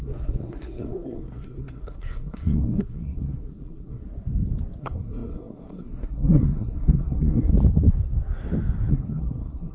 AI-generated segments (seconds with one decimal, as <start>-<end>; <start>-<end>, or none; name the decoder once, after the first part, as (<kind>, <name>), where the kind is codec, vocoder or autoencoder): 0.0-4.0 (codec, SNAC); 4.8-7.5; 8.9-9.7